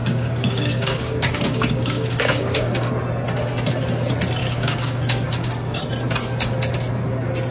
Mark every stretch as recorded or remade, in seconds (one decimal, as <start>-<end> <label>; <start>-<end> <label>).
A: 0.0-2.9 remade; 2.9-4.4 recorded; 4.4-5.8 remade; 5.8-7.5 recorded